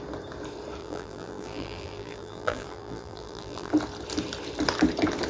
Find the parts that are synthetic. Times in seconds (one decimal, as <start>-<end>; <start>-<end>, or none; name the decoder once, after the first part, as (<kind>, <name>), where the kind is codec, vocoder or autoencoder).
0.8-3.7 (vocoder, BigVGAN v2)